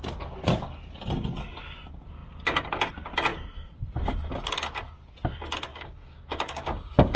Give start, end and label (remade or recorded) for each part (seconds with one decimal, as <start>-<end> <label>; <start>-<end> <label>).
0.0-5.7 recorded; 5.7-7.2 remade